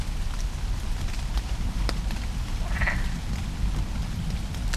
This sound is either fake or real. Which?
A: real